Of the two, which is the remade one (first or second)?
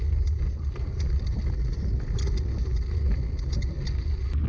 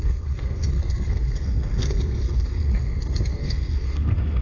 second